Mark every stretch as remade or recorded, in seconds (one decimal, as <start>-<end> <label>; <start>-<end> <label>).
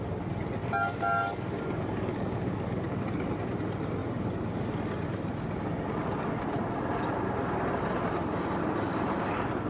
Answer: 0.0-0.6 recorded; 0.6-3.0 remade; 3.0-9.7 recorded